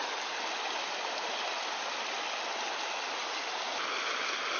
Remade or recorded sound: recorded